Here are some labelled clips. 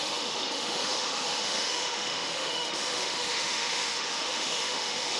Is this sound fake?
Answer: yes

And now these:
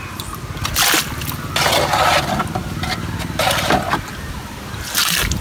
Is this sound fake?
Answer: no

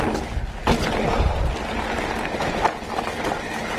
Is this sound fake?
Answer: no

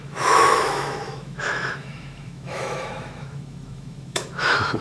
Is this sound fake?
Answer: yes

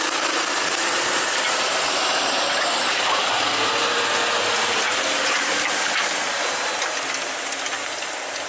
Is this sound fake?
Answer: no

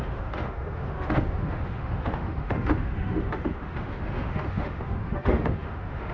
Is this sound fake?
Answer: yes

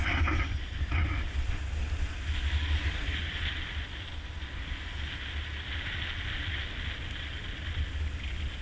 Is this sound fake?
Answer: no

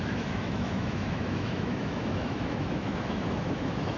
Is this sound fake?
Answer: yes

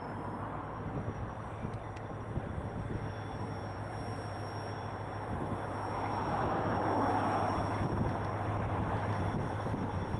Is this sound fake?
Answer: no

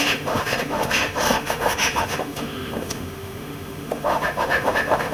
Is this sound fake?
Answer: yes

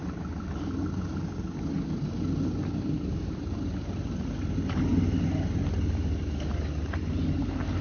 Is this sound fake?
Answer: no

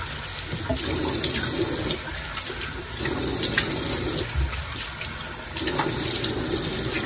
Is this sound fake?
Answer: no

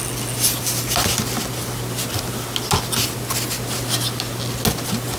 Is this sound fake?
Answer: no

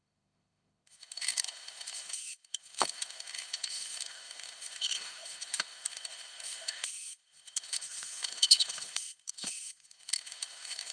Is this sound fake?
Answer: yes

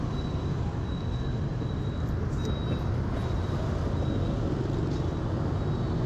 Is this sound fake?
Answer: no